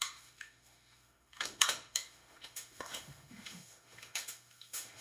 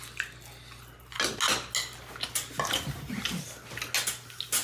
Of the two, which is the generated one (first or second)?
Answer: first